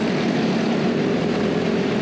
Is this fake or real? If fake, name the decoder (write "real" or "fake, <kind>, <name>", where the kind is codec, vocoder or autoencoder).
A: fake, vocoder, BigVGAN v2